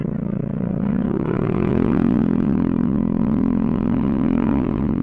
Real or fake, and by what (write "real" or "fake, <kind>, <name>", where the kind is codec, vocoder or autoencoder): fake, vocoder, WaveNeXt